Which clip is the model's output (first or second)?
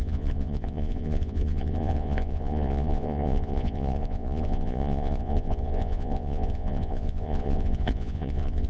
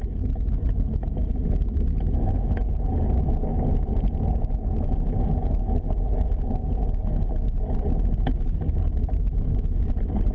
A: first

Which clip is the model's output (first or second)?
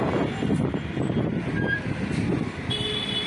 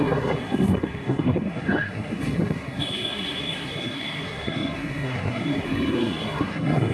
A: second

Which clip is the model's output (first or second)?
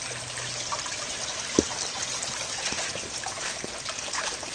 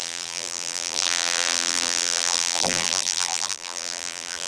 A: second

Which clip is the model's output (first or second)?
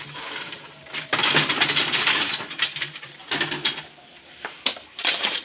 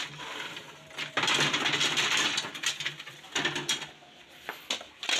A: first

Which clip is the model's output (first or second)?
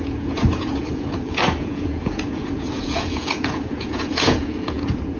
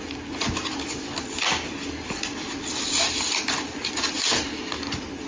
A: first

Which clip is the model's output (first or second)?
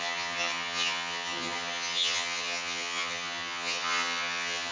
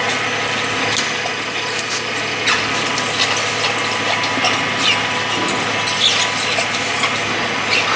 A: first